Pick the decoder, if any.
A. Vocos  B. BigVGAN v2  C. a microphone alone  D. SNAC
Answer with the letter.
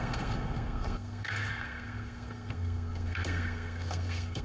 D